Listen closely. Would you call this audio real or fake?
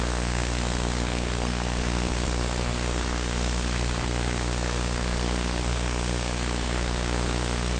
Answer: fake